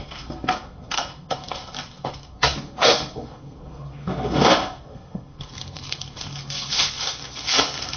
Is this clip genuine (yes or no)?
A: no